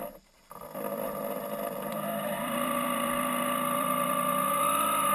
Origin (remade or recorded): remade